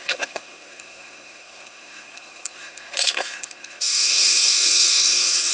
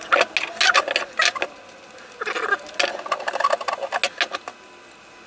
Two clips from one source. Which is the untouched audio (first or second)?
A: second